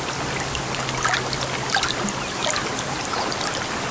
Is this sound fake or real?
real